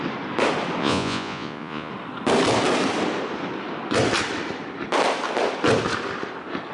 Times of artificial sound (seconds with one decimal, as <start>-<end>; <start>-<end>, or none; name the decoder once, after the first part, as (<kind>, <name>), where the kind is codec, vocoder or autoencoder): 0.8-1.9 (vocoder, Vocos)